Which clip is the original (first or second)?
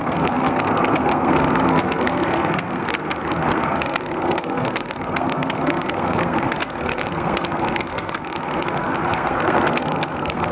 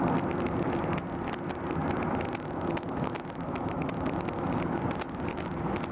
second